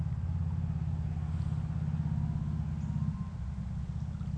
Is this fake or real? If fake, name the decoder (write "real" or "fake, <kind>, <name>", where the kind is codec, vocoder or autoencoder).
real